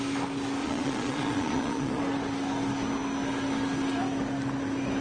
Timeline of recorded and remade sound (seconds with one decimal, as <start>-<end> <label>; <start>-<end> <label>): 0.0-0.6 recorded; 0.6-2.0 remade; 2.0-5.0 recorded